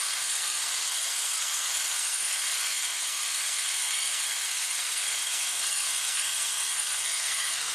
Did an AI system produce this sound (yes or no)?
yes